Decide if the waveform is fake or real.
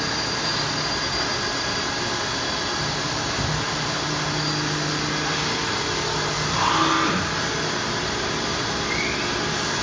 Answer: real